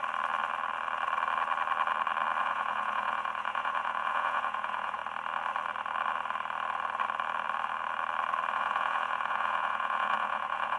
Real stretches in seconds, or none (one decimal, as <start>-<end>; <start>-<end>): 0.0-2.4; 5.0-8.5